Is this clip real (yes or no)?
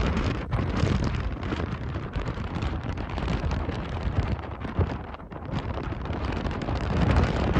no